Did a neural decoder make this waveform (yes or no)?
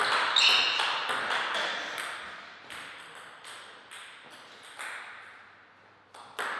no